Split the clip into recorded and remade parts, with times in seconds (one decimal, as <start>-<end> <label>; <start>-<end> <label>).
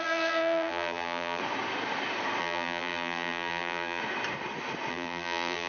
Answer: 0.0-1.4 remade; 1.4-2.4 recorded; 2.4-4.0 remade; 4.0-4.9 recorded; 4.9-5.7 remade